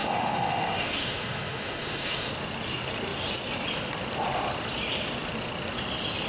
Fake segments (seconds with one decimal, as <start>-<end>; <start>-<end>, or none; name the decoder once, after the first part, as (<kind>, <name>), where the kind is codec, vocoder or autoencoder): 0.0-2.3 (autoencoder, DAC-VAE)